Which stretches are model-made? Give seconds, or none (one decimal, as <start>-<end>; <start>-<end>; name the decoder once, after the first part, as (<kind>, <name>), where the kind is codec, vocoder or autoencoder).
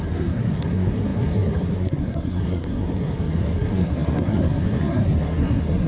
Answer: 0.0-5.9 (codec, SNAC)